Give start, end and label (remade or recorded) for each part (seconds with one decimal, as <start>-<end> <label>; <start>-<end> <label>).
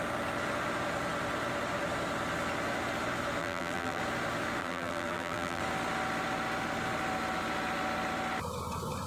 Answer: 0.0-3.4 recorded; 3.4-4.0 remade; 4.0-4.6 recorded; 4.6-5.6 remade; 5.6-9.1 recorded